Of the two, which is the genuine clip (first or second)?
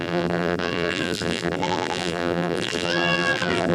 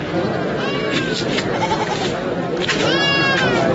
second